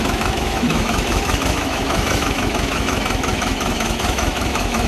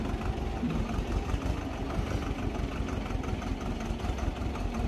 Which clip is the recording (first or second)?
second